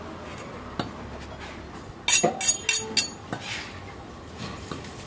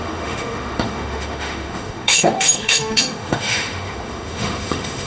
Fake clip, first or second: second